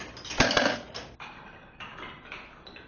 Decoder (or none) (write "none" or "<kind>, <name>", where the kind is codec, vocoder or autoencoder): none